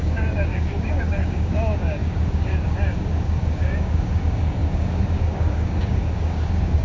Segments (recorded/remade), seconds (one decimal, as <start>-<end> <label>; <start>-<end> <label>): 0.0-6.8 remade